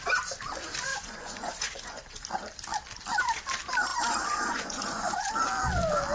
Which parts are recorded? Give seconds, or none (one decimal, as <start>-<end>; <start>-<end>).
0.0-0.9; 2.2-3.9; 5.3-6.1